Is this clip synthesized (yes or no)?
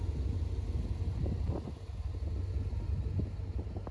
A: no